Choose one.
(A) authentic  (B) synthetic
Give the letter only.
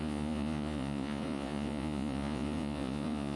B